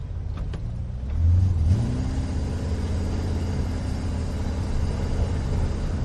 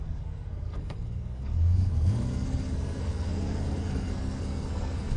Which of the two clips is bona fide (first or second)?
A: first